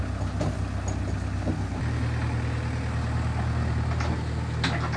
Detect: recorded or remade recorded